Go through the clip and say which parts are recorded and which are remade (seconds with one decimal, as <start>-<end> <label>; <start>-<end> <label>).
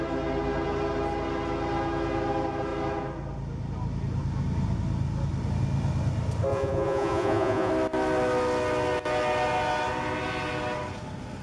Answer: 0.0-6.5 recorded; 6.5-7.7 remade; 7.7-11.4 recorded